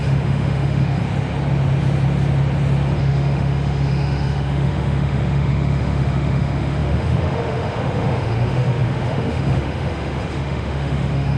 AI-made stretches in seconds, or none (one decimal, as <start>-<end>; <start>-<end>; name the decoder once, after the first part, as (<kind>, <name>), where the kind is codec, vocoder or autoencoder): 0.0-1.0 (autoencoder, DAC-VAE); 3.0-11.4